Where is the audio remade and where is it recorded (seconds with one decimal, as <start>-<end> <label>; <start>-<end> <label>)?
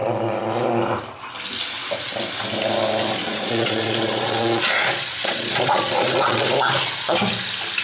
0.0-3.2 recorded; 3.2-6.5 remade; 6.5-7.8 recorded